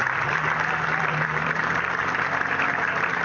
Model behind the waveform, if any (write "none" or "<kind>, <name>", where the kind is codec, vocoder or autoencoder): vocoder, BigVGAN v2